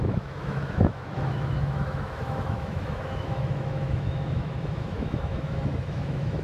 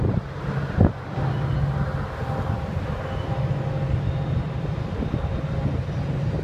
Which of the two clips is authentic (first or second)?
second